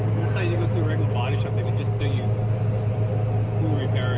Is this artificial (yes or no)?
no